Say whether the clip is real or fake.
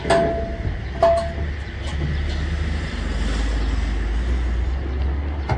real